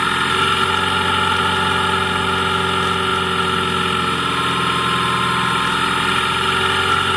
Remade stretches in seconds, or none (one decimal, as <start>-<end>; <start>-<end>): none

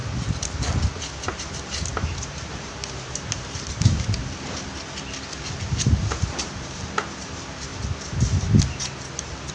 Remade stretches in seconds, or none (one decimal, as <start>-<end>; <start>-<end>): 1.4-4.2; 6.4-7.7

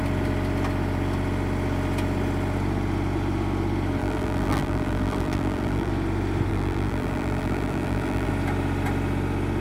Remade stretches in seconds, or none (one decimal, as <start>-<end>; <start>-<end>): 4.0-5.9; 6.5-8.3

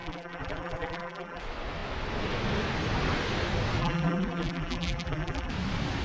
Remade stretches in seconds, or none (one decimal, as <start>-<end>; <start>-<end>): 0.0-1.4; 3.8-5.5